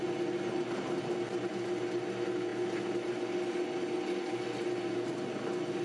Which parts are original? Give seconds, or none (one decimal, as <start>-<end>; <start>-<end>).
0.0-5.8